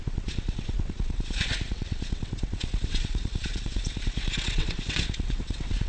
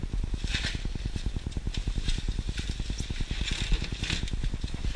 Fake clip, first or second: first